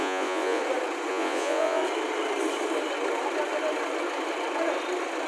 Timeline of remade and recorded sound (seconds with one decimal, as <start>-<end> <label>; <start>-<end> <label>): 0.0-0.6 remade; 0.6-1.1 recorded; 1.1-1.8 remade; 1.8-5.3 recorded